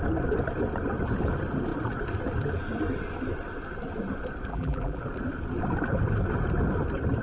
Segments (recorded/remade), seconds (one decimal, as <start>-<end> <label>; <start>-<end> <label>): 0.0-4.5 recorded; 4.5-5.0 remade; 5.0-7.2 recorded